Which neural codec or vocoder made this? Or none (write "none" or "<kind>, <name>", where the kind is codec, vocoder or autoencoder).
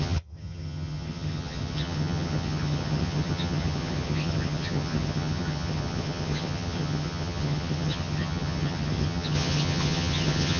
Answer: vocoder, HiFi-GAN